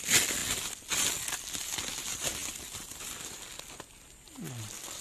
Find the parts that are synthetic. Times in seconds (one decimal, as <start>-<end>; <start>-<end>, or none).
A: none